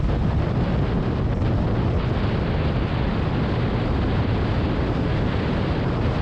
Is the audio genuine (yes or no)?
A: yes